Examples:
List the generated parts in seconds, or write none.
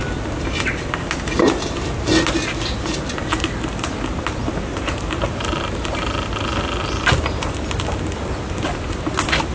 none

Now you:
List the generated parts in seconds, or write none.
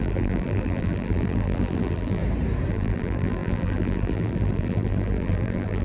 0.0-2.2 (vocoder, BigVGAN v2); 2.7-5.8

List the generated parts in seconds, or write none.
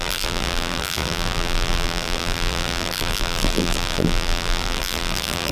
0.0-5.5 (vocoder, BigVGAN v2)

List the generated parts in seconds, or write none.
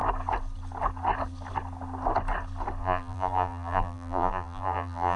2.8-5.2 (vocoder, BigVGAN v2)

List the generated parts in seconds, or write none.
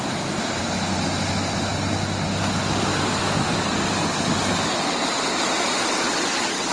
none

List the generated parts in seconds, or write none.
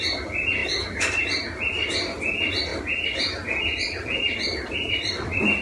0.6-1.2 (vocoder, BigVGAN v2); 2.7-5.6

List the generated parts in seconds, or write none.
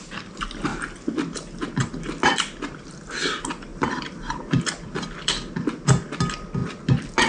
3.7-4.4 (vocoder, BigVGAN v2)